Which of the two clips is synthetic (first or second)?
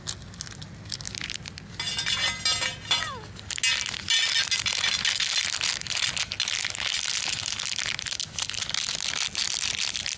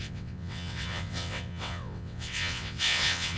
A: second